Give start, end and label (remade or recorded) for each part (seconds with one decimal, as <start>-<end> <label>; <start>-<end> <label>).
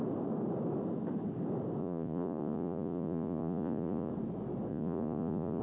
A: 0.0-1.8 recorded; 1.8-4.1 remade; 4.1-4.7 recorded; 4.7-5.6 remade